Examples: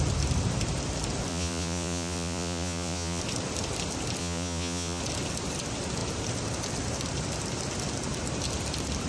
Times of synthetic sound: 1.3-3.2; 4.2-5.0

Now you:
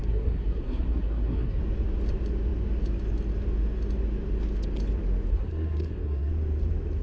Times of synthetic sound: 0.0-1.6; 5.3-6.3

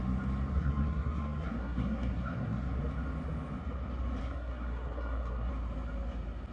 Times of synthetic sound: 0.5-2.8; 4.2-5.5

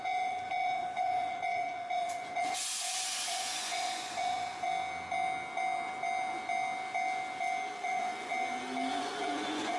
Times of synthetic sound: 0.0-4.7; 7.7-8.3; 8.9-9.8

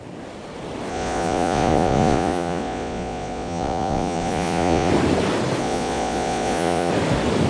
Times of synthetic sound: 0.9-4.9; 5.6-6.9

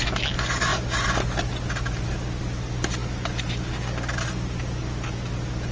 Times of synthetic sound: none

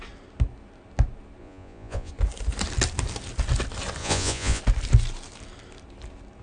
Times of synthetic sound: 1.4-2.1; 4.0-4.6

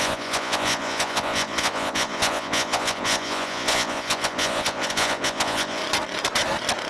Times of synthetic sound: 0.0-5.8